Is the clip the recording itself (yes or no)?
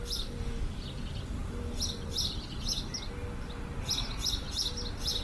yes